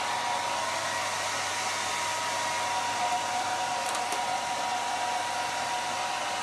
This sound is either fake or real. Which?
real